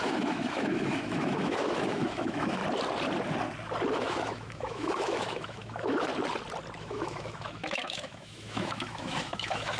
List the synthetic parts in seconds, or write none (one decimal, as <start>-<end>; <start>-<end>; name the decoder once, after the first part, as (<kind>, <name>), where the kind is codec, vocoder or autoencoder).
0.0-2.6 (autoencoder, DAC-VAE); 3.9-6.1; 6.8-9.8